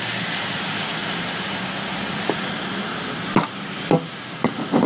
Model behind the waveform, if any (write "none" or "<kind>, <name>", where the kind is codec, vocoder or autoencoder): none